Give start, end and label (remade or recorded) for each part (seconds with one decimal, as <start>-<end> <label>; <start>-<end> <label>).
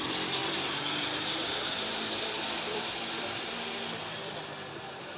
0.0-0.4 recorded; 0.4-3.5 remade; 3.5-5.2 recorded